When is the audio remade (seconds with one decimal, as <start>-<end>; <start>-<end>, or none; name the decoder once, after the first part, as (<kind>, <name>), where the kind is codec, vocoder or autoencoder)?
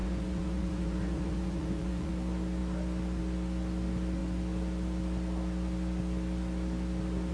0.0-2.1 (vocoder, Vocos)